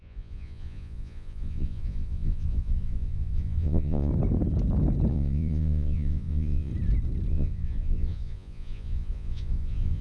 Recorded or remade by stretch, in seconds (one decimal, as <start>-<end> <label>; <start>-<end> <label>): 0.0-4.1 remade; 4.1-5.1 recorded; 5.1-6.7 remade; 6.7-7.3 recorded; 7.3-10.0 remade